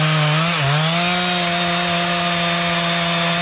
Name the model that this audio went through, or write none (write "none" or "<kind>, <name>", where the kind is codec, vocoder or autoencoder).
none